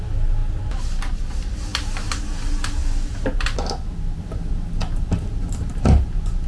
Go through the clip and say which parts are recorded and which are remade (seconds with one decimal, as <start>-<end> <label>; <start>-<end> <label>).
0.0-6.5 recorded